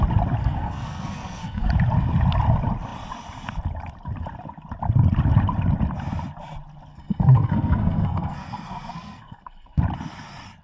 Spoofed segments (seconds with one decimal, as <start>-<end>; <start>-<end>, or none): 0.4-1.7; 6.9-9.8